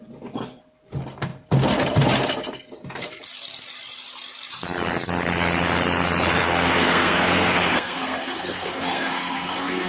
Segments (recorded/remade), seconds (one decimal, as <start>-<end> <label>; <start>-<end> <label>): 0.0-6.4 recorded; 6.4-9.9 remade